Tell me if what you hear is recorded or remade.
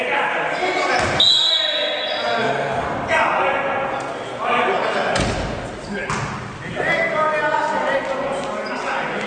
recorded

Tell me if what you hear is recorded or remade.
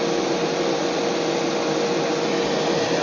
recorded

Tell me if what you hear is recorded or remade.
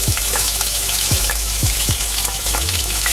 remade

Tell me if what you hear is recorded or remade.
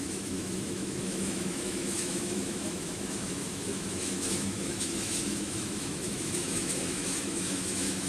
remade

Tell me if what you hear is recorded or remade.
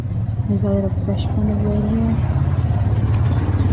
recorded